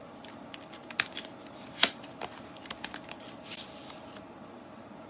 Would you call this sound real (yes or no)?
no